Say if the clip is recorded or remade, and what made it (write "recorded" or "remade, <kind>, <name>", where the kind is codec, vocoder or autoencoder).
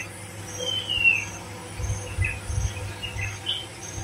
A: recorded